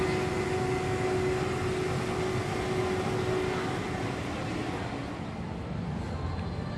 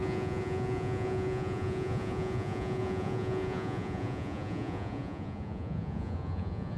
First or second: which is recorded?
first